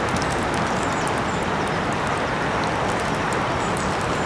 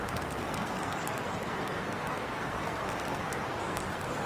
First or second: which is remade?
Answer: second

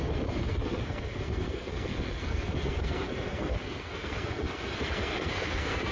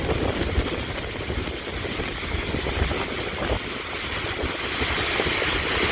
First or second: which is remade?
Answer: first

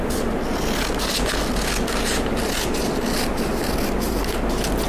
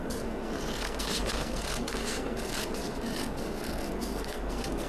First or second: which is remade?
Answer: second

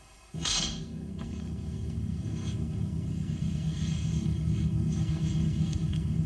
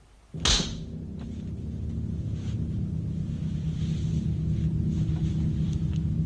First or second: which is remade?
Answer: first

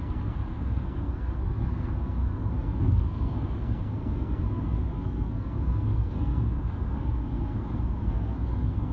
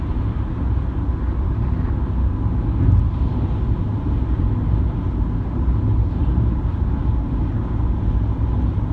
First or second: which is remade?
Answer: first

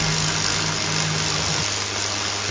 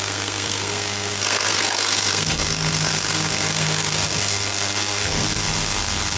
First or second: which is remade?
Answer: second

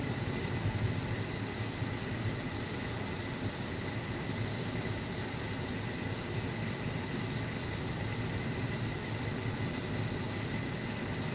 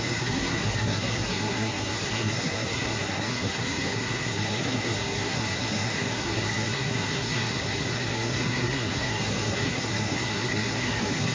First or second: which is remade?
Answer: second